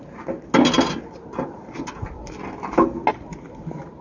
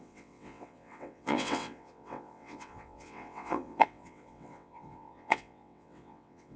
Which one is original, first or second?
first